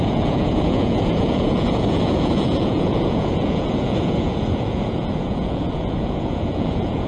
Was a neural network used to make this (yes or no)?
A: yes